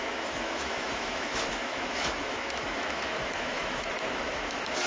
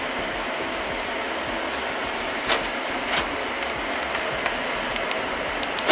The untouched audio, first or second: second